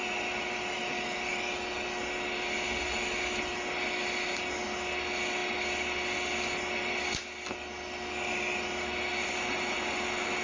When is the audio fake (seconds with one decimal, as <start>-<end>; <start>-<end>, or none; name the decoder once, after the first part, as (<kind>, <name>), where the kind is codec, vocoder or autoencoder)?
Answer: none